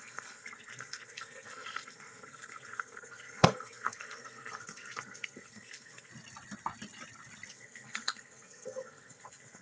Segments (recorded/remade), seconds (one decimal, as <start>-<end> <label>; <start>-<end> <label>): 0.0-6.1 remade; 6.1-7.5 recorded; 7.5-9.6 remade